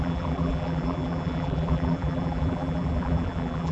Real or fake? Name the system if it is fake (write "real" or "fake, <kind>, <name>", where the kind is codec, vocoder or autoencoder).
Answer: fake, vocoder, BigVGAN v2